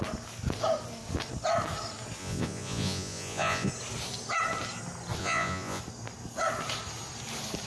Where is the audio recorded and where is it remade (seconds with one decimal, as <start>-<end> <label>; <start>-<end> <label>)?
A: 0.0-2.2 recorded; 2.2-3.7 remade; 3.7-5.2 recorded; 5.2-5.8 remade; 5.8-7.7 recorded